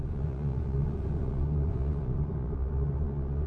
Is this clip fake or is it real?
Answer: fake